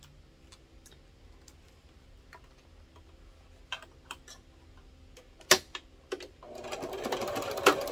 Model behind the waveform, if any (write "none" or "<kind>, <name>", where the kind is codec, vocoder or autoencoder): none